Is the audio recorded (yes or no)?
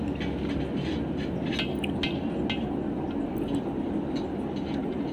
yes